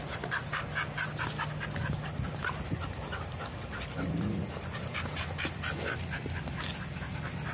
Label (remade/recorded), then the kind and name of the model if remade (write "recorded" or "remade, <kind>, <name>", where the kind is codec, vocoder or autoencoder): recorded